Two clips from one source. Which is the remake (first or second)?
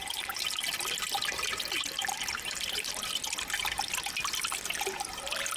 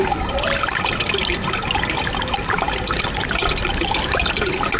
first